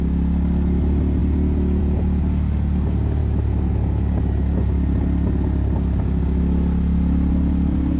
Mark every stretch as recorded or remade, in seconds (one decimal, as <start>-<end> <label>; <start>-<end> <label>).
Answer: 0.0-8.0 recorded